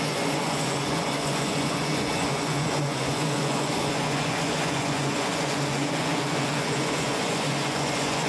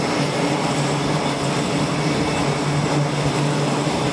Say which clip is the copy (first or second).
first